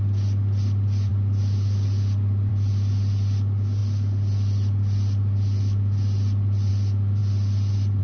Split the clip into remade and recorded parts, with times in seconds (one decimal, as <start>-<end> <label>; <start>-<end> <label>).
0.0-8.0 recorded